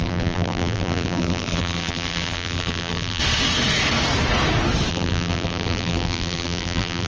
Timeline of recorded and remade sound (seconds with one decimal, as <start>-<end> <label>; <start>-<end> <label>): 0.0-3.2 remade; 3.2-4.9 recorded; 4.9-7.1 remade